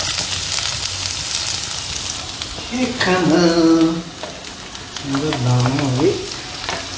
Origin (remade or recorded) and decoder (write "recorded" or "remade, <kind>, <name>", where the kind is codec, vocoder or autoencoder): recorded